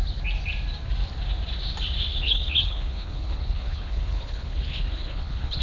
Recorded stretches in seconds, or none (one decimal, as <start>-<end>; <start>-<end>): 0.0-2.1